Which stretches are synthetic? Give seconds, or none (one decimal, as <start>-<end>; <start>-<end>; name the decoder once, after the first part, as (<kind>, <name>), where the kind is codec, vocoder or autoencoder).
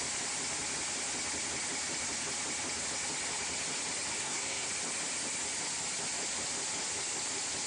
4.2-4.7 (codec, SNAC)